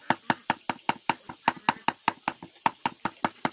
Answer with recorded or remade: recorded